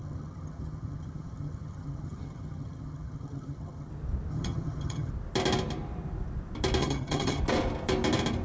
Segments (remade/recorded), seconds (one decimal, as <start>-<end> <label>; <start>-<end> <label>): 0.0-3.9 remade; 3.9-4.3 recorded; 4.3-5.1 remade; 5.1-6.8 recorded; 6.8-7.4 remade; 7.4-8.4 recorded